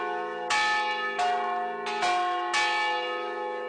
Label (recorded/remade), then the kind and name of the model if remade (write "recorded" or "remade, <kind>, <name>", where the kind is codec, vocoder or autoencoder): recorded